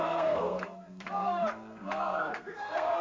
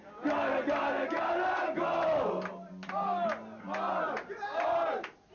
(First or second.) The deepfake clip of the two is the first